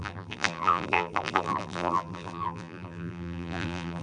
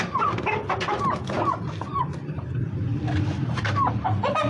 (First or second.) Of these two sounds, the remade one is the first